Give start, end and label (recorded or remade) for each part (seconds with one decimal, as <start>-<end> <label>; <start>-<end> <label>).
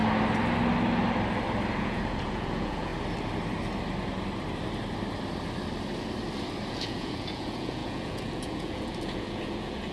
0.0-1.8 recorded; 1.8-2.9 remade; 2.9-6.7 recorded; 6.7-9.9 remade